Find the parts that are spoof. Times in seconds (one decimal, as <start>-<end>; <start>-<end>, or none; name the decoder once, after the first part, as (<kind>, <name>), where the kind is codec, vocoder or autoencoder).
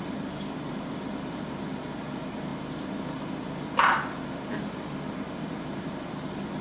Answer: none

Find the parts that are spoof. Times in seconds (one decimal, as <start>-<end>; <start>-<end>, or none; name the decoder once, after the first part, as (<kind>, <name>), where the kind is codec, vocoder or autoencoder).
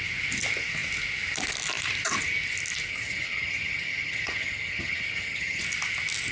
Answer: 2.9-5.6 (vocoder, HiFi-GAN)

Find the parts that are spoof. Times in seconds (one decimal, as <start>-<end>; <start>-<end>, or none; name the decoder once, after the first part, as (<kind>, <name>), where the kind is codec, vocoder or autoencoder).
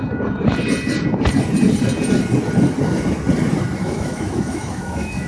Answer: 3.8-5.3 (autoencoder, DAC-VAE)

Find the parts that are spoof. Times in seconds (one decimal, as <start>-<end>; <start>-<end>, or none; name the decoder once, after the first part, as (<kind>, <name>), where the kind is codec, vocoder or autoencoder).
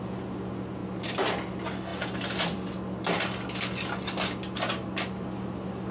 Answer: 0.8-1.4 (vocoder, BigVGAN v2)